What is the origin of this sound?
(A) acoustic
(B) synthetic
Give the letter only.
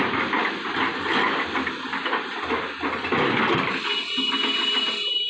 A